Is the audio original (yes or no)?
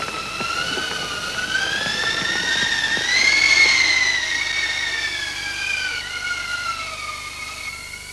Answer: yes